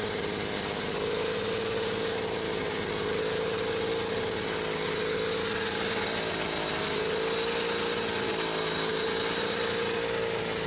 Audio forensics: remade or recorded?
recorded